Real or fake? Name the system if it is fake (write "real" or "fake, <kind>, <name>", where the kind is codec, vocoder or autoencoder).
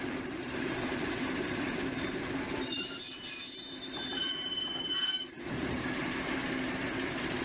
fake, vocoder, BigVGAN v2